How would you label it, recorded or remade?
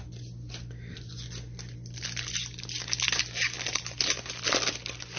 recorded